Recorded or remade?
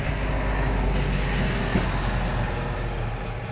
recorded